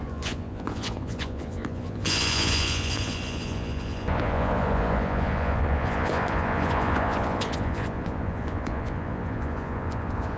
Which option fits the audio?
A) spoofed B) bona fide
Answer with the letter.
A